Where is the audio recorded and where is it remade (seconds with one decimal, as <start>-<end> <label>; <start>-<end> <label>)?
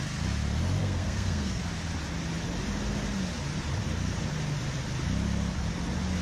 0.0-0.8 recorded; 0.8-1.6 remade; 1.6-6.2 recorded